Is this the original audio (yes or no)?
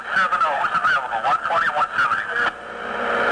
yes